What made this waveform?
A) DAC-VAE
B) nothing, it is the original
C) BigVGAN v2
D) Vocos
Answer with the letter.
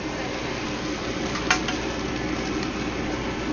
B